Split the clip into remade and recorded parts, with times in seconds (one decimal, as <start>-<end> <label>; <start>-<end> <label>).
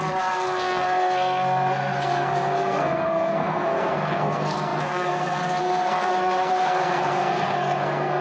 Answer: 0.0-8.2 remade